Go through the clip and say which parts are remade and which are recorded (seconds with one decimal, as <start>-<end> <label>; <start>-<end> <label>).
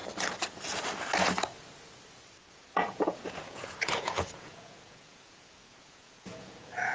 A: 0.0-2.5 recorded; 2.5-6.9 remade